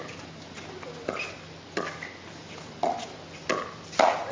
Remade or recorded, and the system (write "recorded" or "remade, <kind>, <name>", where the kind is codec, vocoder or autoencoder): recorded